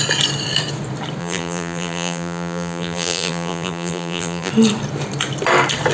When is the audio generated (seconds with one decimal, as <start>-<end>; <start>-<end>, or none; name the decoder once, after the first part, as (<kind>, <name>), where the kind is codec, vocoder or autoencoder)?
1.2-4.5 (vocoder, BigVGAN v2)